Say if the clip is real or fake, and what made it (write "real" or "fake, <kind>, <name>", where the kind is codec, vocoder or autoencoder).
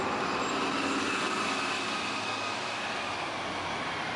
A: real